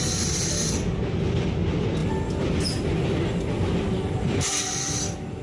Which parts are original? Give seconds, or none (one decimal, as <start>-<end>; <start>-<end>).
0.0-5.4